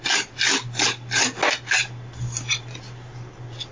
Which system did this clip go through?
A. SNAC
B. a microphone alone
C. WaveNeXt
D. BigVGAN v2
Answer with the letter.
B